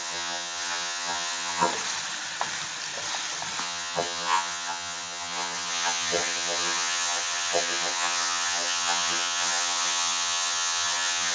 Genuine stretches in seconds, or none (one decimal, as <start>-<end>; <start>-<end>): 1.7-3.6